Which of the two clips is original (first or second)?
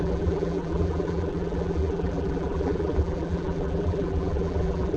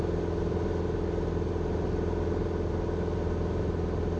second